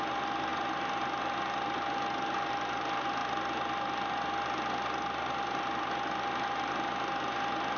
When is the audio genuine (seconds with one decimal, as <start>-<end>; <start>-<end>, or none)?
0.0-7.8